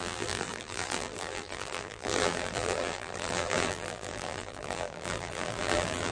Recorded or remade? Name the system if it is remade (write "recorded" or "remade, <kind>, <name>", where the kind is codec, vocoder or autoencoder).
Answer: remade, vocoder, BigVGAN v2